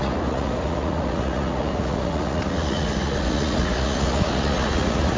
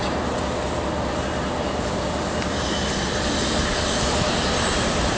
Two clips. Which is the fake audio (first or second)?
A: first